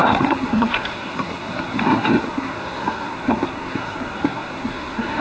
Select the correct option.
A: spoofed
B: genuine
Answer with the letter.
A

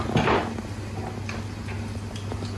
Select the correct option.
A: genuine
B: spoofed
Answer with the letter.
A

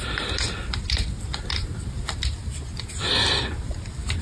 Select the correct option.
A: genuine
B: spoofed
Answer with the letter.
A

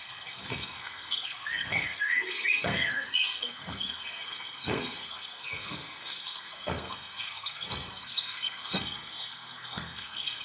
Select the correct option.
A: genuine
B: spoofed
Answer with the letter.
B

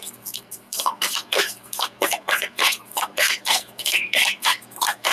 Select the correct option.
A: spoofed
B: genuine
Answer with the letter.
A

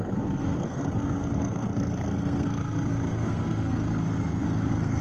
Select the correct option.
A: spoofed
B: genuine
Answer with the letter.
A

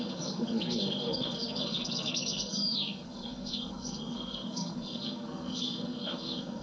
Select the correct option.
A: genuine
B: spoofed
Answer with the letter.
B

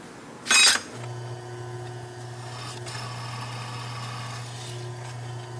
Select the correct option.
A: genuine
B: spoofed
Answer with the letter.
A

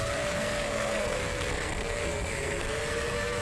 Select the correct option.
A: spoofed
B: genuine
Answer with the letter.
A